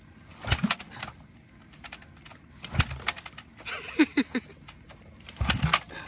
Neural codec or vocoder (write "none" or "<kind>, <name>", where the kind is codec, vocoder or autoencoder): none